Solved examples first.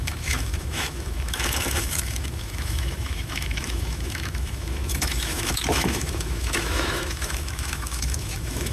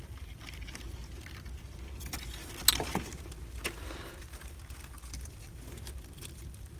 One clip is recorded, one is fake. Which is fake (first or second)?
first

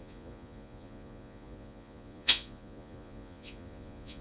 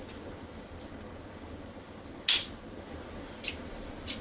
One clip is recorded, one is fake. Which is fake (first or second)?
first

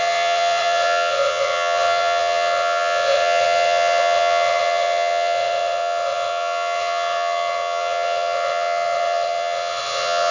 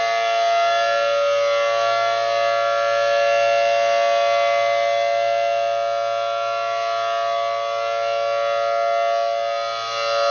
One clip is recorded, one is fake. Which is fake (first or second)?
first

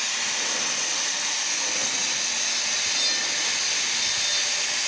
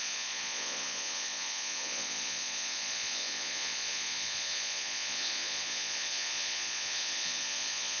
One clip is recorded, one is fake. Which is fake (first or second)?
second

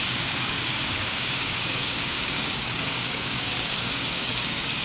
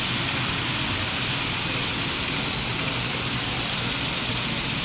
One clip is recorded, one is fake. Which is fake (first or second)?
first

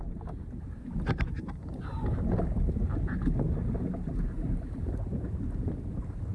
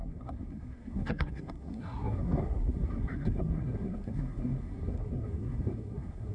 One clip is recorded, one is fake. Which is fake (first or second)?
second